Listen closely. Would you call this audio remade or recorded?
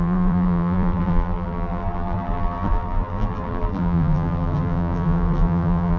remade